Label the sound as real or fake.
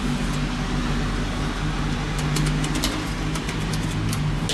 real